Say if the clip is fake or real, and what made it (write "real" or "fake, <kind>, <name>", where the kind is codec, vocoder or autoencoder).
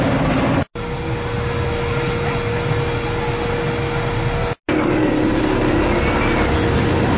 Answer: real